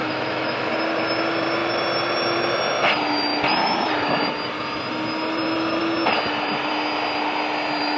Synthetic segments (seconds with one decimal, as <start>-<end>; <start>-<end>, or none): 0.0-0.7